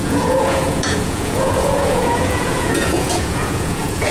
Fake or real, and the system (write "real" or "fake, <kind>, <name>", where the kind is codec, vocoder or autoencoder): fake, vocoder, Vocos